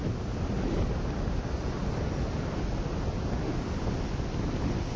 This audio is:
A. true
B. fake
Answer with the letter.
A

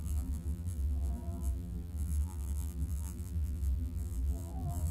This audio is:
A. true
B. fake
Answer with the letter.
B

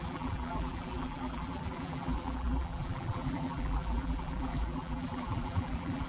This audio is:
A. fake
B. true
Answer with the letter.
A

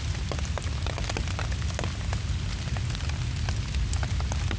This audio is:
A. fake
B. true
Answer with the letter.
B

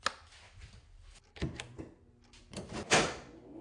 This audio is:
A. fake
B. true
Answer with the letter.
B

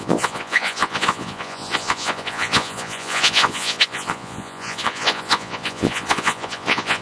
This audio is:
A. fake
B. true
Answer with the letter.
A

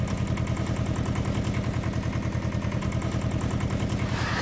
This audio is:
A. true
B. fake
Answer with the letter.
A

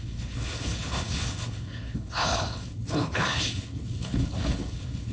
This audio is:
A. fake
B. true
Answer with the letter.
A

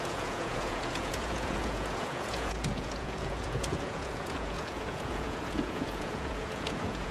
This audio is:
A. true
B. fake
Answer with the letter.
B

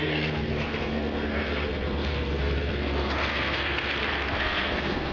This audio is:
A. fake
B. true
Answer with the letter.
A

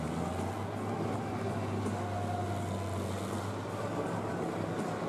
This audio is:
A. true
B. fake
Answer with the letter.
A